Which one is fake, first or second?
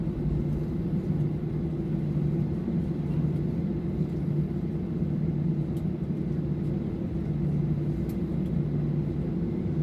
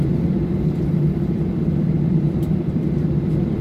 second